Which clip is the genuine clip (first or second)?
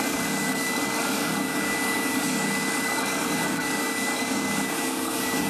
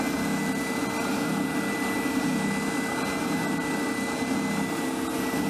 second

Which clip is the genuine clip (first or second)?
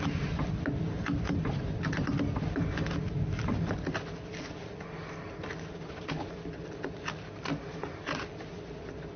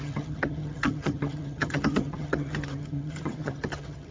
first